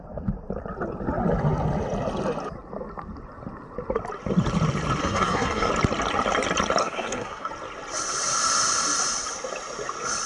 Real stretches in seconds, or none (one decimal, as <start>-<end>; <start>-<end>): 0.0-5.0; 5.7-6.8; 7.5-10.3